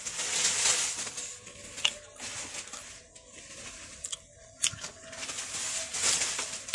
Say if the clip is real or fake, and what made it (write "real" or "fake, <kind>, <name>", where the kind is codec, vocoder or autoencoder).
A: real